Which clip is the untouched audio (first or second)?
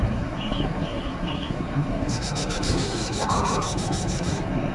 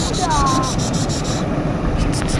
second